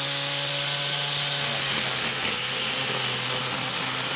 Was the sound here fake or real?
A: real